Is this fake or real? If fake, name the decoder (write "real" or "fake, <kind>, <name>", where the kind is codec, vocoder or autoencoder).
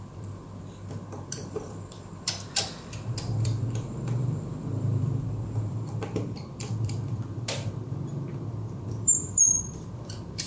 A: fake, vocoder, BigVGAN v2